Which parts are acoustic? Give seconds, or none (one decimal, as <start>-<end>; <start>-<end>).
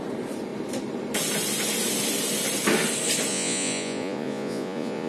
0.0-3.3